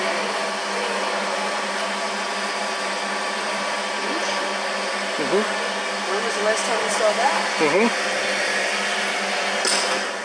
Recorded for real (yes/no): yes